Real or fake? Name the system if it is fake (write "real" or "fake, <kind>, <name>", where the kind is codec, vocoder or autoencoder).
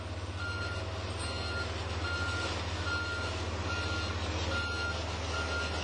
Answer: real